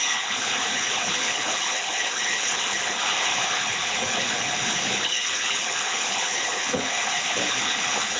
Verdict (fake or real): fake